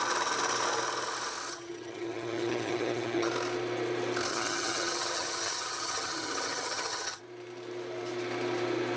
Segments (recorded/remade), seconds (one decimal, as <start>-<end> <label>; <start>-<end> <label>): 0.0-1.5 recorded; 1.5-3.3 remade; 3.3-4.3 recorded; 4.3-7.2 remade; 7.2-9.0 recorded